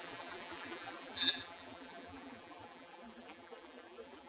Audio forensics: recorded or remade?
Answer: remade